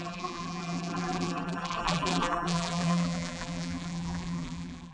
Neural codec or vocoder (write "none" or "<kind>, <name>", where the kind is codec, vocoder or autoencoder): vocoder, BigVGAN v2